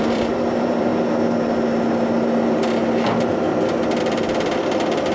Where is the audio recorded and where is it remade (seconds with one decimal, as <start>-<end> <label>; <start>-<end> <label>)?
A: 0.0-0.9 remade; 0.9-4.0 recorded; 4.0-5.1 remade